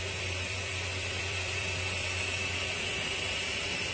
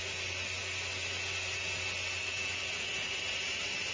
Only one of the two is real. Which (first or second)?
second